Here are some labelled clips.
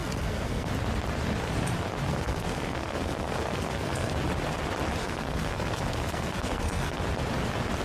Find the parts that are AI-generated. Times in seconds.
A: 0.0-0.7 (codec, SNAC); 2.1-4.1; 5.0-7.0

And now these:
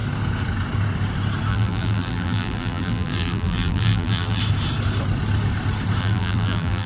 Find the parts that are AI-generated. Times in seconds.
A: 1.5-4.4 (vocoder, BigVGAN v2); 6.0-6.9

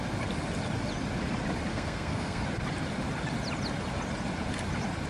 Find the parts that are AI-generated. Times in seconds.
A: 1.7-2.4 (codec, SNAC)

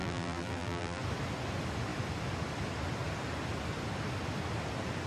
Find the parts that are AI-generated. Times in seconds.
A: 0.0-1.0 (vocoder, BigVGAN v2)